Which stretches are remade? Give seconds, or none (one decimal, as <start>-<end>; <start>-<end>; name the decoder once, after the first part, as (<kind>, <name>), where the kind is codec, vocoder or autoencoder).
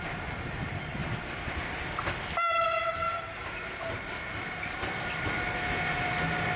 none